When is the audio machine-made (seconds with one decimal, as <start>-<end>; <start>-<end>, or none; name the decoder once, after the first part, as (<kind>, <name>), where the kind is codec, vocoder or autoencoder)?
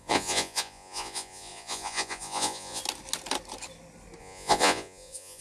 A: 0.0-2.8 (vocoder, Vocos); 4.2-5.4